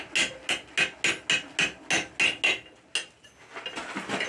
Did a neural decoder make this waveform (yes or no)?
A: no